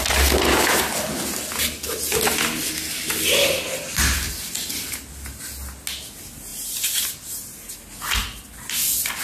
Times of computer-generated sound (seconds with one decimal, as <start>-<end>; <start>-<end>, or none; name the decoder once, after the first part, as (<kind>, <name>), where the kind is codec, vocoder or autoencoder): none